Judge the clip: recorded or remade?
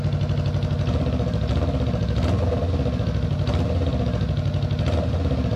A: recorded